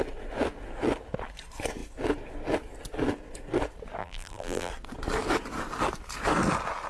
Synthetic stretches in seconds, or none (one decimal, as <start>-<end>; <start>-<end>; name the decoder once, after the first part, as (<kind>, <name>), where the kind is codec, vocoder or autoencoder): 4.0-4.7 (vocoder, BigVGAN v2)

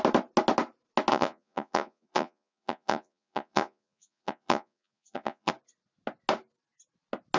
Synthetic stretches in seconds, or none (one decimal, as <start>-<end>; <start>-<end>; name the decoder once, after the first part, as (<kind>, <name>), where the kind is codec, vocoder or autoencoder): 1.1-5.5 (vocoder, Vocos)

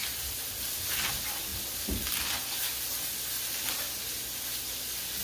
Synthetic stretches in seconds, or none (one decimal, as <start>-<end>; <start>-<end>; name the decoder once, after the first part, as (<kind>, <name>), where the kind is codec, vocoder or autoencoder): none

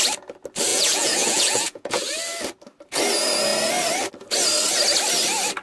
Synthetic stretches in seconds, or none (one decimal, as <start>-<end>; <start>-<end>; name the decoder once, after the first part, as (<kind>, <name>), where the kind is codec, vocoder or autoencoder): 0.7-2.0 (vocoder, Vocos)

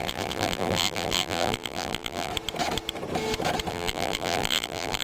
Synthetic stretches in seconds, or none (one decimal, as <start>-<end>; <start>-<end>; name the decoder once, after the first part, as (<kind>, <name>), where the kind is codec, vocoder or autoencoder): 0.0-2.3 (vocoder, BigVGAN v2); 3.7-5.0

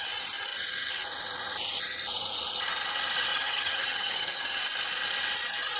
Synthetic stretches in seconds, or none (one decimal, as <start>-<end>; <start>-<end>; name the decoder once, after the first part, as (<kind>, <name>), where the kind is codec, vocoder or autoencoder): 3.3-4.6 (vocoder, HiFi-GAN)

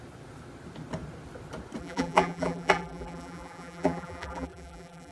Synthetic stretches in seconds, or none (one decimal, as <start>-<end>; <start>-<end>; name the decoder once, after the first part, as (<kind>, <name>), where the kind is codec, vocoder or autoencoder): 1.8-5.1 (vocoder, BigVGAN v2)

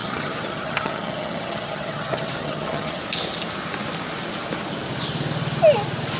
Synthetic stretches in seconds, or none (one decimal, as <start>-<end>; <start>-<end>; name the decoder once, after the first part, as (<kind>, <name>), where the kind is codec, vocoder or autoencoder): 0.0-3.0 (vocoder, HiFi-GAN)